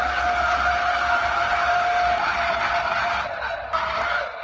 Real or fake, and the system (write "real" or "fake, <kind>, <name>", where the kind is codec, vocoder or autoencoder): real